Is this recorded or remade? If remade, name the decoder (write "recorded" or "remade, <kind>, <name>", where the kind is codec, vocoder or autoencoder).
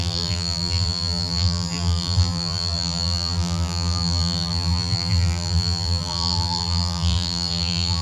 remade, vocoder, BigVGAN v2